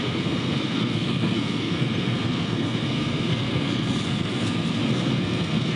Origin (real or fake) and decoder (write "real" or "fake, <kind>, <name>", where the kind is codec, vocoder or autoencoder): fake, codec, SNAC